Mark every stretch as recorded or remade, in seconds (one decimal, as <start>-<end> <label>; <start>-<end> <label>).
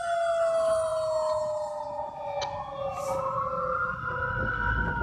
0.0-5.0 recorded